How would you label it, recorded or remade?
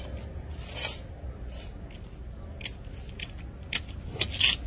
recorded